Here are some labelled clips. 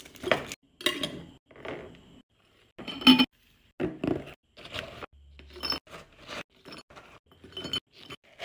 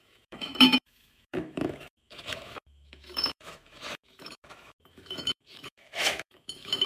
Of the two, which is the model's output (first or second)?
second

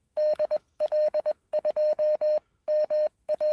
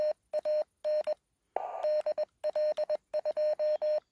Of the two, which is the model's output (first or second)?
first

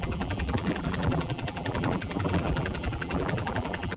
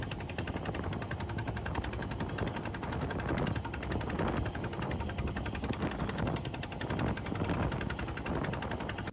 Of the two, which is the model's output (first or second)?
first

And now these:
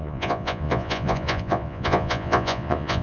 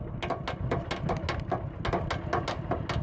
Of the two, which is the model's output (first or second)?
first